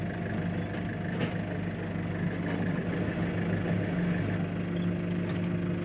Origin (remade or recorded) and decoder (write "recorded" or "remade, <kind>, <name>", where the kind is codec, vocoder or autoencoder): recorded